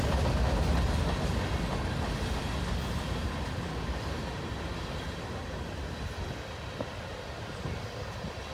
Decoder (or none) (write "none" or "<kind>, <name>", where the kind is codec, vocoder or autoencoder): none